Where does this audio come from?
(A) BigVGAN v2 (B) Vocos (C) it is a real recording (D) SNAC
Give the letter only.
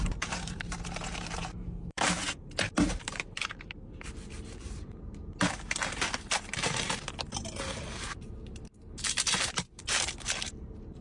A